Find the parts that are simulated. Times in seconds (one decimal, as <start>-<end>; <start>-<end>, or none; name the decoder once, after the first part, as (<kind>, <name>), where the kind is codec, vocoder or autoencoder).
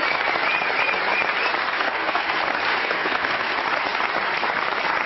1.7-2.3 (codec, SNAC); 2.7-3.5